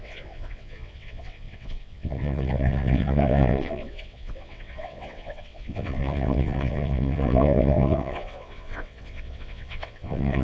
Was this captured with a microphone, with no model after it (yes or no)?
no